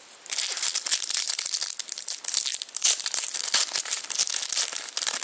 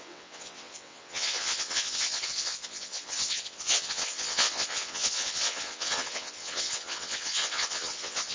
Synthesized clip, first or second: second